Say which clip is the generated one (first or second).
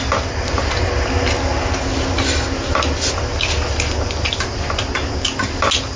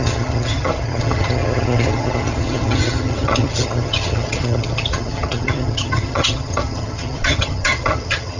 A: second